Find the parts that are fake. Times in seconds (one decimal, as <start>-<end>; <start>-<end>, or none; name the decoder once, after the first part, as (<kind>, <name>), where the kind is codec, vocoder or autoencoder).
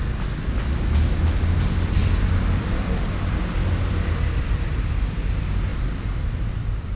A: 2.0-3.9 (vocoder, BigVGAN v2)